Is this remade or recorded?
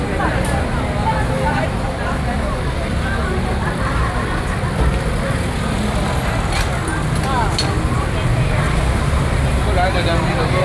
recorded